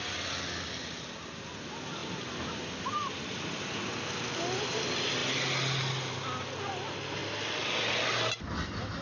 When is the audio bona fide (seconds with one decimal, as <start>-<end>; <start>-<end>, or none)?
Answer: 0.0-9.0